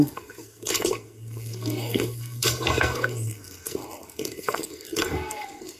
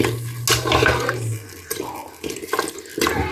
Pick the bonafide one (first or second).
second